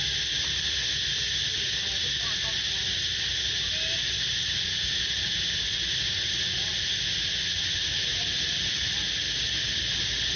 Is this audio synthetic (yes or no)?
no